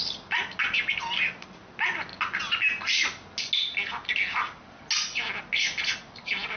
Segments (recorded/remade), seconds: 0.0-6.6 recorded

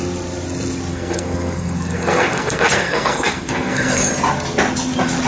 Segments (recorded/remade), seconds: 0.0-0.9 recorded; 0.9-4.1 remade; 4.1-5.3 recorded

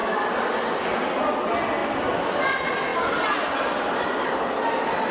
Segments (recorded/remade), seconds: 0.0-5.1 recorded

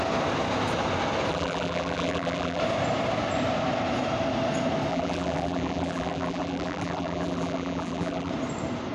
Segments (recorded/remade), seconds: 0.0-1.3 recorded; 1.3-2.6 remade; 2.6-4.9 recorded; 4.9-8.3 remade; 8.3-8.9 recorded

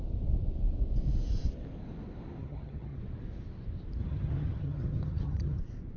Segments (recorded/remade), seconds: 0.0-2.4 recorded; 2.4-3.0 remade; 3.0-4.0 recorded; 4.0-5.6 remade; 5.6-6.0 recorded

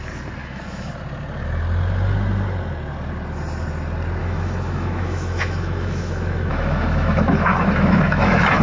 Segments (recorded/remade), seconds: 0.0-0.4 recorded; 0.4-0.9 remade; 0.9-4.2 recorded; 4.2-8.6 remade

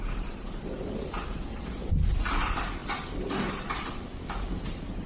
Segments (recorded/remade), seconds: 0.0-2.8 remade; 2.8-3.7 recorded; 3.7-5.1 remade